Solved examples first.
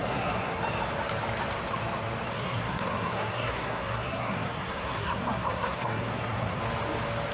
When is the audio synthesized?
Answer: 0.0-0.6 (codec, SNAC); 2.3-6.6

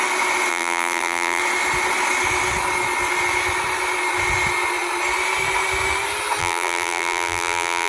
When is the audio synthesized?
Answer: 0.5-1.4 (vocoder, BigVGAN v2); 6.4-7.9

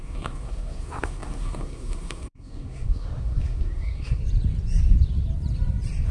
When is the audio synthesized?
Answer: 0.0-4.2 (codec, SNAC)

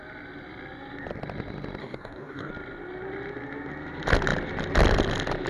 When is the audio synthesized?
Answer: 1.8-2.5 (codec, DAC)

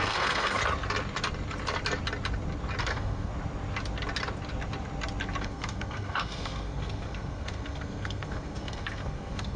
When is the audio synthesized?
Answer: 0.0-0.6 (codec, SNAC); 2.8-3.3; 5.4-9.6

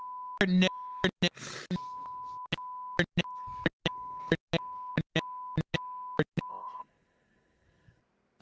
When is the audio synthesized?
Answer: 6.5-8.0 (codec, SNAC)